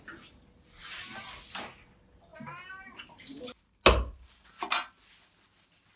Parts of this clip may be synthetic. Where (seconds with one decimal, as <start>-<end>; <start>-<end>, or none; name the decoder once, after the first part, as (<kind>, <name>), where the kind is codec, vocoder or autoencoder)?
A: 2.3-3.6 (vocoder, BigVGAN v2)